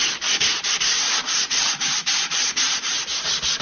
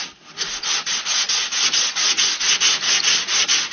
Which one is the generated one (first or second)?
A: first